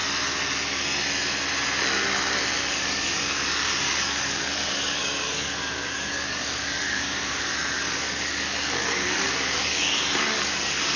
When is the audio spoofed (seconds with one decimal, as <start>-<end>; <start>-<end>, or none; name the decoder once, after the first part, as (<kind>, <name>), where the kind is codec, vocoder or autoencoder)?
2.7-11.0 (codec, DAC)